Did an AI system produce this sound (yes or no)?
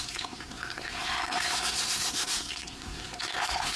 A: yes